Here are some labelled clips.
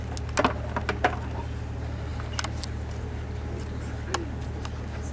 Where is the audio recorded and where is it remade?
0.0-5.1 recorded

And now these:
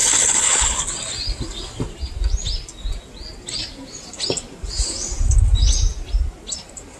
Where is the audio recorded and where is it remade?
0.0-0.8 remade; 0.8-7.0 recorded

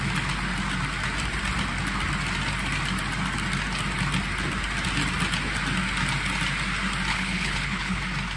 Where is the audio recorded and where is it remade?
0.0-7.1 recorded; 7.1-8.0 remade; 8.0-8.4 recorded

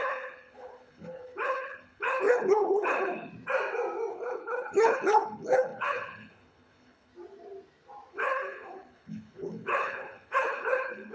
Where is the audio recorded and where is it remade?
0.0-3.3 remade; 3.3-4.1 recorded; 4.1-7.1 remade; 7.1-8.1 recorded; 8.1-11.1 remade

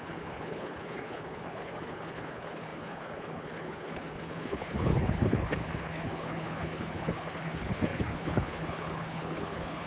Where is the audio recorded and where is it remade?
0.0-9.9 remade